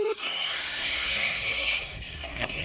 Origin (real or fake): fake